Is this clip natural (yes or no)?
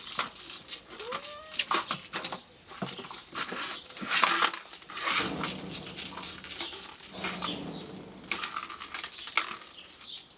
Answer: yes